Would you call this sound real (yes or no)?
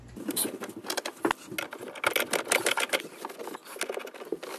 yes